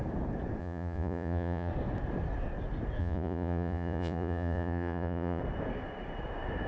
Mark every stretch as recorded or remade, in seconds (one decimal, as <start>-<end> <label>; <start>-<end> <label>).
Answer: 0.0-0.6 recorded; 0.6-1.7 remade; 1.7-3.0 recorded; 3.0-5.4 remade; 5.4-6.7 recorded